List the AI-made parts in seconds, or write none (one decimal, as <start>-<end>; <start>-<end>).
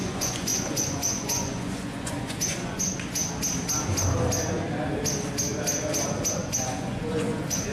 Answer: 0.0-3.2; 6.3-7.7